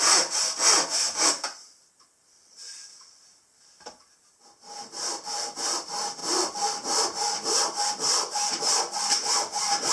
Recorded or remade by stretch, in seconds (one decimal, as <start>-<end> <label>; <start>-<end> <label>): 0.0-9.9 recorded